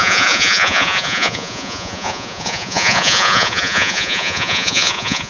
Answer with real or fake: fake